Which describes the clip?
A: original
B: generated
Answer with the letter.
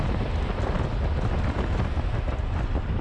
A